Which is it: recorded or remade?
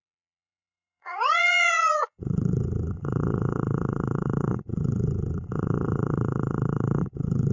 remade